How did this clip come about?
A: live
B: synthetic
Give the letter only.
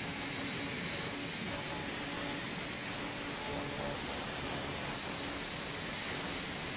A